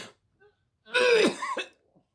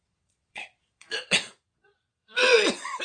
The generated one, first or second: second